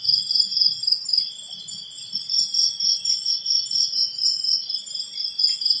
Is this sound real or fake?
real